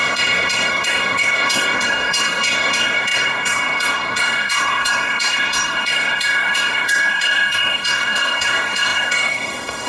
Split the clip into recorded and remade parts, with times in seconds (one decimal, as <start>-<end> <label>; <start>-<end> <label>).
0.0-9.9 remade